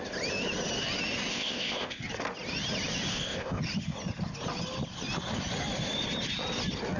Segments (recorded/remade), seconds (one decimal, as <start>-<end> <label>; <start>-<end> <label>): 0.0-1.3 recorded; 1.3-2.0 remade; 2.0-3.1 recorded; 3.1-3.6 remade; 3.6-7.0 recorded